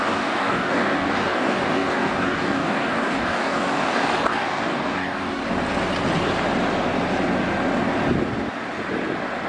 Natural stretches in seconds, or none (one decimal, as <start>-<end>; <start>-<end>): 5.4-9.5